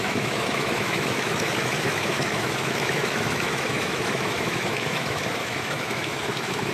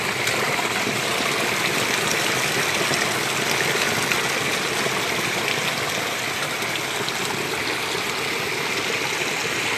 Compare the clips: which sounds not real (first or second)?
first